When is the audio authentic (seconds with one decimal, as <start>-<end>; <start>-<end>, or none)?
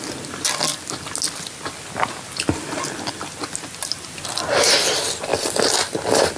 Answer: 0.0-6.4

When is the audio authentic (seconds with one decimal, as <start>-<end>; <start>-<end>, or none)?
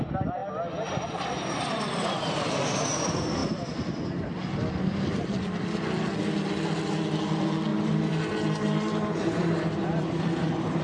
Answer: 0.0-7.7